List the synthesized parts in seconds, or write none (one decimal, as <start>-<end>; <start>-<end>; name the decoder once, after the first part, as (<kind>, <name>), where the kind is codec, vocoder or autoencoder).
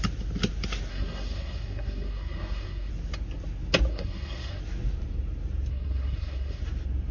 0.9-2.9 (codec, SNAC); 3.9-4.6; 5.7-6.6